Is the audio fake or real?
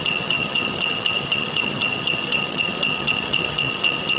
fake